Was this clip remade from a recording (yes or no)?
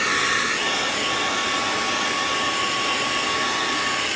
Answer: no